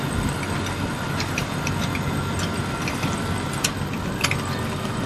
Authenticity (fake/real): real